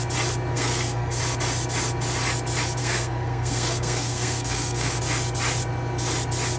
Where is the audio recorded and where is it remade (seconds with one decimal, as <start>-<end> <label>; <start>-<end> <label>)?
0.0-0.5 recorded; 0.5-1.2 remade; 1.2-2.8 recorded; 2.8-5.0 remade; 5.0-6.6 recorded